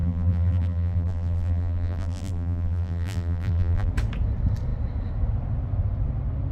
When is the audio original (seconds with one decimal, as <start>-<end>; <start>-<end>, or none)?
3.9-6.5